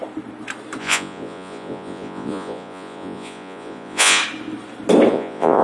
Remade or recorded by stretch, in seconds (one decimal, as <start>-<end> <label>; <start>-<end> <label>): 0.0-0.8 recorded; 0.8-4.2 remade; 4.2-5.1 recorded; 5.1-5.6 remade